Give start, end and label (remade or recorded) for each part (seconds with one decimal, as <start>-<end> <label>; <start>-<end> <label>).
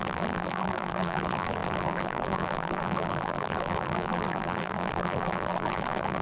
0.0-6.2 remade